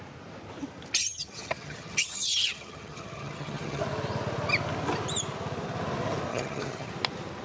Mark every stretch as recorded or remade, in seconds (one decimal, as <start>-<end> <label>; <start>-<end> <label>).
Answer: 0.0-1.0 recorded; 1.0-3.8 remade; 3.8-6.3 recorded; 6.3-6.9 remade; 6.9-7.4 recorded